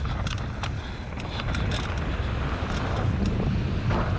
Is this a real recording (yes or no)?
yes